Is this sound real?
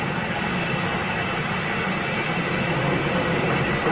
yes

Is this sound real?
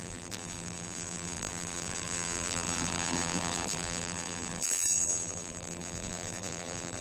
no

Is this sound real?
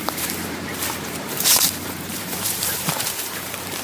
no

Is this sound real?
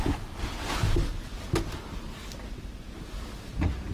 yes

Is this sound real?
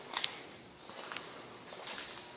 yes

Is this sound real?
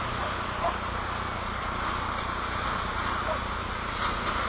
yes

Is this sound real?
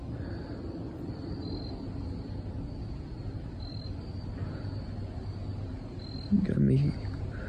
yes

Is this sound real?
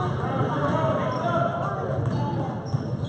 yes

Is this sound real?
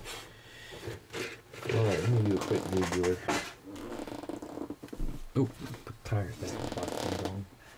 yes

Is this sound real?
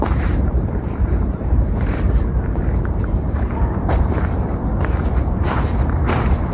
no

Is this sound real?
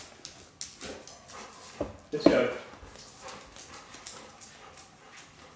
yes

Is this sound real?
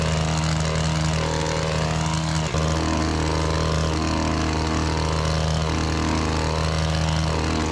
yes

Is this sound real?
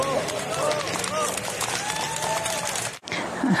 yes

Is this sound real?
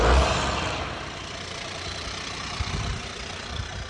no